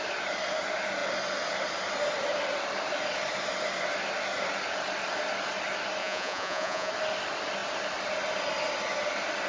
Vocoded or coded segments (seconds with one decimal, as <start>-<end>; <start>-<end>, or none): 6.0-6.9